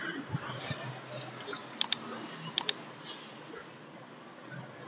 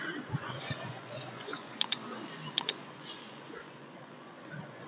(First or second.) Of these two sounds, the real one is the first